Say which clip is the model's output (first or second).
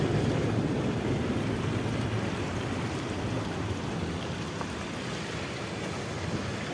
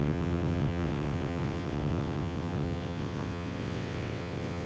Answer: second